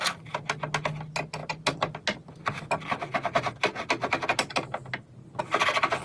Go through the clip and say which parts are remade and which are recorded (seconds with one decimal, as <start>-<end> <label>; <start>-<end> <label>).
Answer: 0.0-6.0 recorded